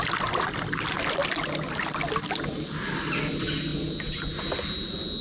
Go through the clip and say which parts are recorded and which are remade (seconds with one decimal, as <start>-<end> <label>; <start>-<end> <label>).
0.0-5.2 recorded